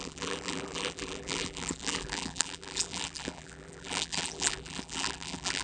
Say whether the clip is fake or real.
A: fake